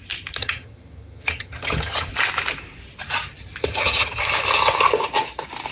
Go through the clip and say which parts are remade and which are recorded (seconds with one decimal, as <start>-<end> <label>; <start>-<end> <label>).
0.0-0.4 recorded; 0.4-2.1 remade; 2.1-3.6 recorded; 3.6-4.2 remade; 4.2-5.7 recorded